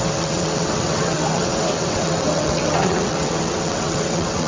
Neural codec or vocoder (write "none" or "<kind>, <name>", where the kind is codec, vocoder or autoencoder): vocoder, WaveNeXt